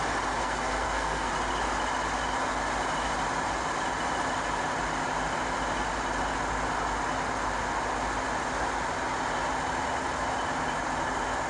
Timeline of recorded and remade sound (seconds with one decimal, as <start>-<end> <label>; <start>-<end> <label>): 0.0-0.4 recorded; 0.4-1.3 remade; 1.3-11.5 recorded